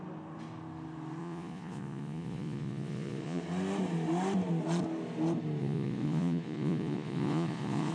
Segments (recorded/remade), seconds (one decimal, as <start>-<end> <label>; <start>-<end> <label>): 0.0-1.2 recorded; 1.2-3.4 remade; 3.4-5.6 recorded; 5.6-7.9 remade